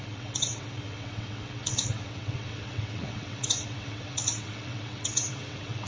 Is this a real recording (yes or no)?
no